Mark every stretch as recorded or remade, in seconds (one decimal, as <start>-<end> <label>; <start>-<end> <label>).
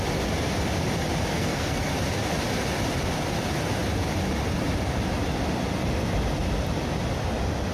0.0-1.3 recorded; 1.3-1.9 remade; 1.9-7.7 recorded